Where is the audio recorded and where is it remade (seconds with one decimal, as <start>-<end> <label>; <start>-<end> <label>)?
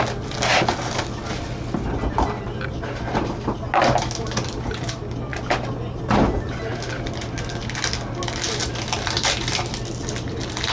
0.0-10.7 recorded